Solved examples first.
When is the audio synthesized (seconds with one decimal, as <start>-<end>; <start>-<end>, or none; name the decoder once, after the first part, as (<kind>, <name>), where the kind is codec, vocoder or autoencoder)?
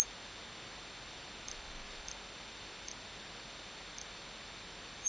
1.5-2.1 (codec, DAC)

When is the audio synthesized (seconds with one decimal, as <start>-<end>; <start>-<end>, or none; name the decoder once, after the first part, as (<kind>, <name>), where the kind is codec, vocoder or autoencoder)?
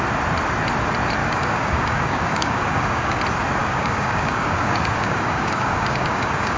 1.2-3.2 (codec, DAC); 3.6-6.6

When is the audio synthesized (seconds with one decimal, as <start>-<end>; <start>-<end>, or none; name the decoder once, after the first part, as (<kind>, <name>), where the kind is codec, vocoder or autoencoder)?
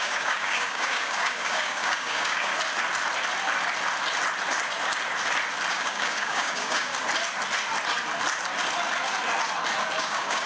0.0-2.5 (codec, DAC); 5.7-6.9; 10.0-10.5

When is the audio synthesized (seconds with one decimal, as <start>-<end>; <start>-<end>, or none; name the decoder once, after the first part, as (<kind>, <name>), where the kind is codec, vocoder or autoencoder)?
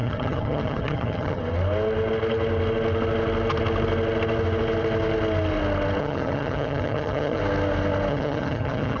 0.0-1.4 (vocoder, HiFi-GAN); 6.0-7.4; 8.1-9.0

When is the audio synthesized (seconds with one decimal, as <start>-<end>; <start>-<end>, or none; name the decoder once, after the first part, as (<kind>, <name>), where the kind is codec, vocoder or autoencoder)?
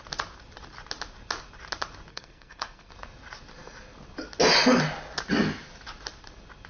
2.1-2.9 (codec, SNAC)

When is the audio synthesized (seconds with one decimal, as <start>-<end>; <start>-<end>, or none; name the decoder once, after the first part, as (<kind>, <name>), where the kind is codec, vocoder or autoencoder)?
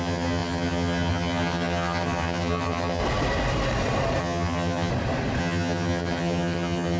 0.0-3.0 (vocoder, HiFi-GAN); 4.2-4.9; 5.4-7.0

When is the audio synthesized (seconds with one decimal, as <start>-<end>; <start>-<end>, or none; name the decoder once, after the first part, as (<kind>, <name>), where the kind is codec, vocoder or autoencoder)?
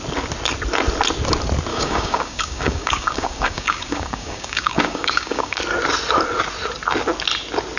1.7-5.6 (codec, DAC)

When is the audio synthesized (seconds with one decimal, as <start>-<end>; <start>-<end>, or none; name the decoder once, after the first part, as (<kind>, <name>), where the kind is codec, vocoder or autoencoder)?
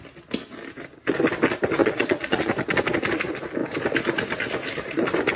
1.8-2.5 (vocoder, Vocos)